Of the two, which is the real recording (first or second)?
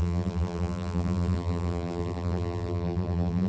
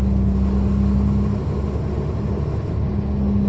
second